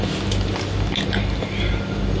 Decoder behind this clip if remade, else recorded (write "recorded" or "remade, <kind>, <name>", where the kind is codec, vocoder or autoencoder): recorded